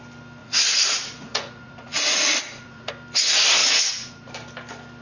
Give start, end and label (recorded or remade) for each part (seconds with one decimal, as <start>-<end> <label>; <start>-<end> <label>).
0.0-0.4 recorded; 0.4-2.9 remade; 2.9-3.6 recorded; 3.6-4.3 remade; 4.3-5.0 recorded